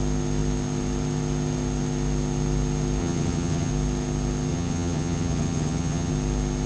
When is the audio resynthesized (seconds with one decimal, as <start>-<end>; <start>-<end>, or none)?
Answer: 3.0-3.7; 4.5-6.1